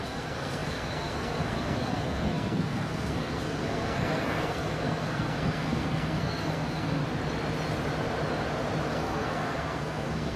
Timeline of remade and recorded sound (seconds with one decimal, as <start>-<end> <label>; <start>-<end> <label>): 0.0-7.0 remade; 7.0-8.9 recorded; 8.9-10.4 remade